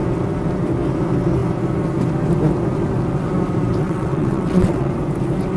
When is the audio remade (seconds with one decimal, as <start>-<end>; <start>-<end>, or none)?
3.8-4.9